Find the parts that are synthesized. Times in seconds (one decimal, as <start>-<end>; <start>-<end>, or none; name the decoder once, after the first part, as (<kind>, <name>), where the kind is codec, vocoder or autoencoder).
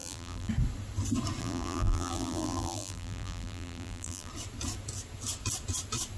0.0-0.5 (vocoder, BigVGAN v2); 1.4-4.3